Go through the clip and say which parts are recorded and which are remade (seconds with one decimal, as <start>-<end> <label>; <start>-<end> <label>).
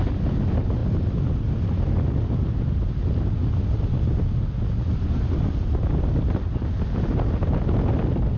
0.0-8.4 recorded